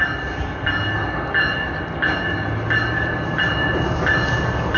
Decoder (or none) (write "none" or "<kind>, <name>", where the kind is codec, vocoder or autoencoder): none